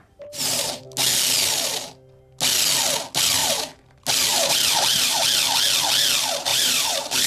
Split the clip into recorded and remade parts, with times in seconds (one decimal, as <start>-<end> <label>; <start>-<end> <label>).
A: 0.0-0.8 remade; 0.8-3.4 recorded; 3.4-3.9 remade; 3.9-4.3 recorded; 4.3-5.2 remade; 5.2-6.5 recorded; 6.5-7.3 remade